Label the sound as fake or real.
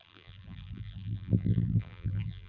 fake